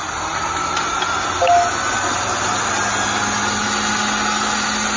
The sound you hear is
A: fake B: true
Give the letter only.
B